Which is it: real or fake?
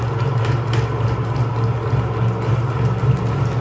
real